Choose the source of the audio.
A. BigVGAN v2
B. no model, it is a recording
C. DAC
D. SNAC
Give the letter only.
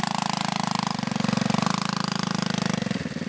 B